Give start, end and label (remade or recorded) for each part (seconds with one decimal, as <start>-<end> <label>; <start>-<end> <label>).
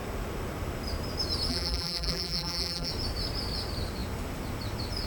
0.0-1.5 recorded; 1.5-2.9 remade; 2.9-5.1 recorded